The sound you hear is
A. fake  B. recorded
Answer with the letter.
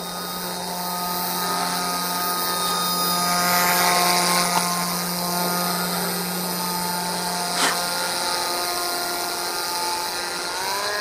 B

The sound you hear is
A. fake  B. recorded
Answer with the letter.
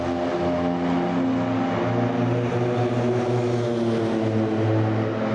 B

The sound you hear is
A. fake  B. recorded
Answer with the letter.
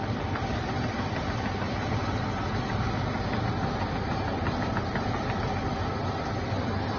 B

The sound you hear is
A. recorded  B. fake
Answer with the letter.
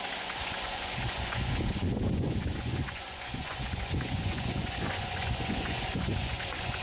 B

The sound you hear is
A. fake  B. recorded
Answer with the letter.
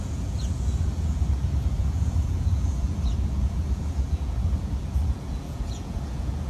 A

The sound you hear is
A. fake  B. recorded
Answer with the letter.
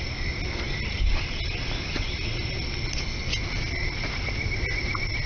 B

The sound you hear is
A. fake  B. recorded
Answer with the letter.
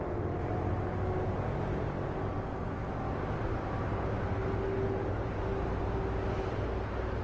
B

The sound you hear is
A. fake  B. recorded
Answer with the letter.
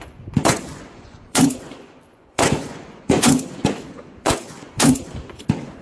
A